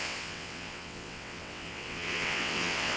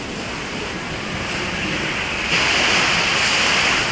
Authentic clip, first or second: second